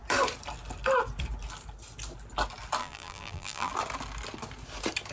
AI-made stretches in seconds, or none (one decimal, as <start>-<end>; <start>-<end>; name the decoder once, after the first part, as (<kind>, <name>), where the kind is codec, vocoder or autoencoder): 2.8-3.7 (vocoder, BigVGAN v2)